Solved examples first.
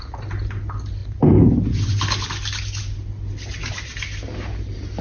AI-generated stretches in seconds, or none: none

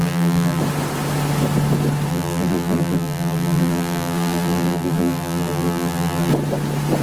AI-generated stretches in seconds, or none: 0.0-0.6 (vocoder, BigVGAN v2); 2.1-6.3

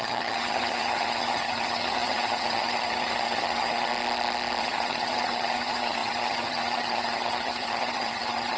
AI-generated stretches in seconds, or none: 0.0-3.9 (vocoder, HiFi-GAN); 4.6-8.6

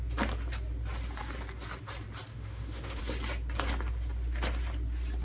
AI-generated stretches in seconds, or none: 2.3-3.0 (autoencoder, DAC-VAE)

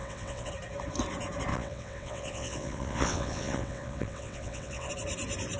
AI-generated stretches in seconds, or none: 0.0-0.5 (vocoder, WaveNeXt); 1.5-4.9

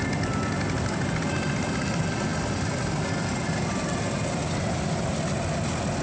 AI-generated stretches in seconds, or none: none